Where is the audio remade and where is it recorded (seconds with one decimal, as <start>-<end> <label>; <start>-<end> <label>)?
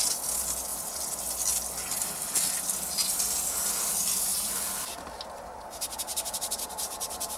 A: 0.0-4.3 recorded; 4.3-5.2 remade; 5.2-6.1 recorded; 6.1-7.4 remade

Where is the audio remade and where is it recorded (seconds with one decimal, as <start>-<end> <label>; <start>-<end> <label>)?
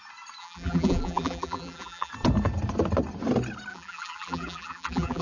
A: 0.0-0.4 recorded; 0.4-2.1 remade; 2.1-3.7 recorded; 3.7-5.2 remade